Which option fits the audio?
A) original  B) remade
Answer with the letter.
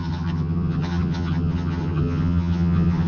B